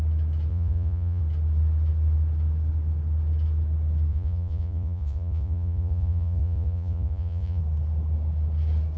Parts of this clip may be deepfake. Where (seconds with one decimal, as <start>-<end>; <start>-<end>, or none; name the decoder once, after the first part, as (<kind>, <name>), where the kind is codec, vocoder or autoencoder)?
0.5-1.2 (vocoder, Vocos); 4.1-7.6